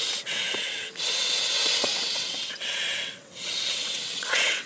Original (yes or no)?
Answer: no